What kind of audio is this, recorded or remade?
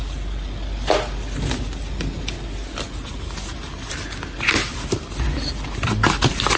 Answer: recorded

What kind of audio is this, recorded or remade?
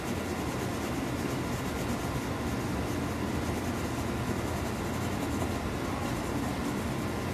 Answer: recorded